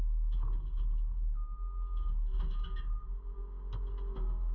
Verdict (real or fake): real